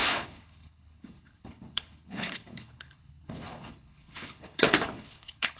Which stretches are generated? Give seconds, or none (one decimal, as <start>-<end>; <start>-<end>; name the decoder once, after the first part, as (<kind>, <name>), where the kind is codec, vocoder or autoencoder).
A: 0.0-5.6 (codec, HILCodec)